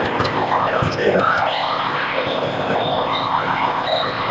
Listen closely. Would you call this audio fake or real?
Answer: fake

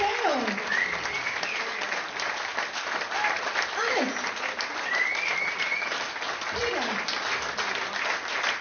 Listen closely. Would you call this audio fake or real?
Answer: real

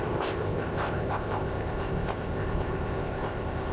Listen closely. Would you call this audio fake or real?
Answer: fake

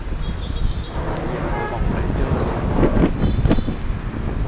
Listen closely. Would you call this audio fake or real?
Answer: real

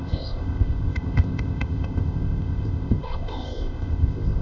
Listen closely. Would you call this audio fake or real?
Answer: fake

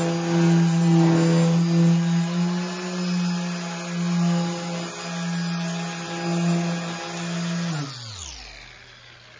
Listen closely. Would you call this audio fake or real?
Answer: real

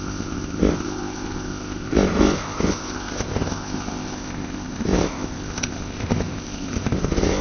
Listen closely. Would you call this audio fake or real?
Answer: fake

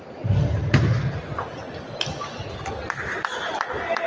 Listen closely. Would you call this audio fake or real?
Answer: real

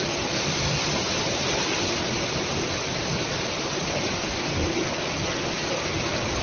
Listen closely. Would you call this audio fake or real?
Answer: real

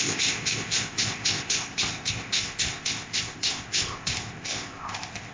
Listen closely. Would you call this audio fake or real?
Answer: fake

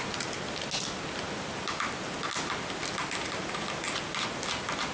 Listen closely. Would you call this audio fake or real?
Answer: real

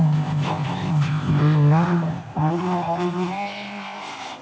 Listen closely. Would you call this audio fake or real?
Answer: fake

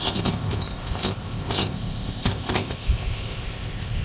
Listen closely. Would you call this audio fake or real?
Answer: fake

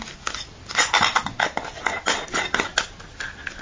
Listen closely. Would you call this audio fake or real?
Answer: real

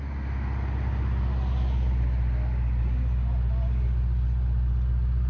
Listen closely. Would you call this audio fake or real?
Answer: real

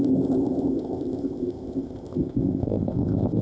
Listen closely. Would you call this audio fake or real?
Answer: fake